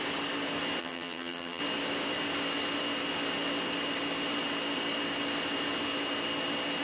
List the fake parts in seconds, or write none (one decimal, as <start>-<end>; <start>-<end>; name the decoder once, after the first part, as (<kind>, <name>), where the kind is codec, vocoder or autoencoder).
0.8-1.6 (vocoder, HiFi-GAN)